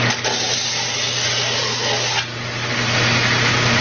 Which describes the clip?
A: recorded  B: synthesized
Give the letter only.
A